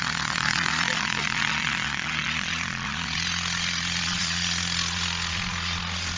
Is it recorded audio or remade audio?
remade